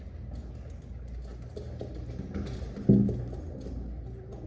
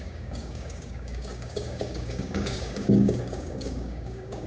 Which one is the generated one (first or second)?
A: second